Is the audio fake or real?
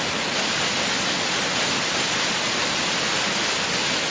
real